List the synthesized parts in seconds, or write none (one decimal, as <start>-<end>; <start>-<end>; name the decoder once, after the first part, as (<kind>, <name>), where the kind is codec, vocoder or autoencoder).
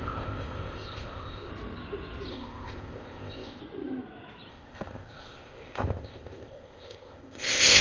0.0-1.5 (codec, ZipCodec); 2.3-3.6; 4.5-7.8